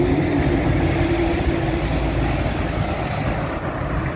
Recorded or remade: recorded